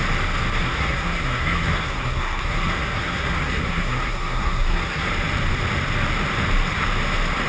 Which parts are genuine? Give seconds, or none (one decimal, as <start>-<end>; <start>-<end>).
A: 0.0-0.6; 5.1-7.5